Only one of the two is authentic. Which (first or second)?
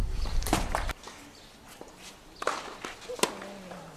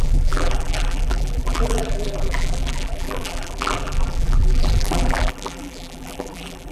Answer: first